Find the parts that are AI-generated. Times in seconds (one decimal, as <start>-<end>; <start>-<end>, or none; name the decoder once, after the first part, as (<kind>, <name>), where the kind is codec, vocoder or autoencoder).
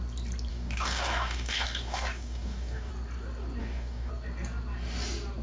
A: 0.5-2.9 (codec, DAC); 3.6-4.1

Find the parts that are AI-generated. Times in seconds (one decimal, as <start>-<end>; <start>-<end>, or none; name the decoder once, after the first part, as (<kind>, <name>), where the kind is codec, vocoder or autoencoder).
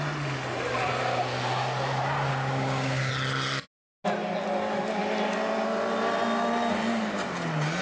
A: 2.3-3.1 (codec, DAC)